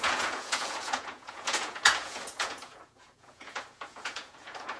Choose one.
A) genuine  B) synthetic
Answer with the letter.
B